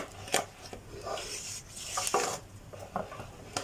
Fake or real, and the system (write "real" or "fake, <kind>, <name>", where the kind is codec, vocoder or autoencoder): real